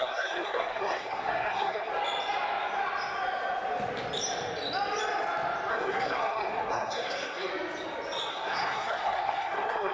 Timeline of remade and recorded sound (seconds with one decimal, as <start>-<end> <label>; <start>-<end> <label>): 0.0-1.9 remade; 1.9-5.7 recorded; 5.7-7.5 remade; 7.5-8.3 recorded; 8.3-9.9 remade